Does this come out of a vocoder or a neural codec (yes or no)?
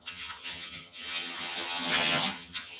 yes